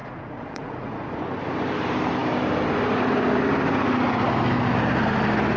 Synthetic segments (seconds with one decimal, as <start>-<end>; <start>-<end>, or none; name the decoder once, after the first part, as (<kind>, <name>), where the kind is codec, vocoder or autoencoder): 0.0-1.2 (vocoder, Vocos)